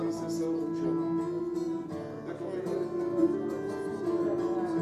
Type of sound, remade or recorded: recorded